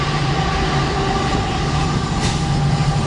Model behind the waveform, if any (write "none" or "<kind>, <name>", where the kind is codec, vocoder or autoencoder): vocoder, BigVGAN v2